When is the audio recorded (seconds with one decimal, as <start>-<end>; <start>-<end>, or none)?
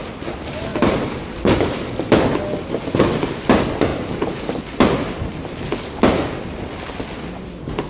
0.0-0.7; 1.9-3.9; 4.6-7.9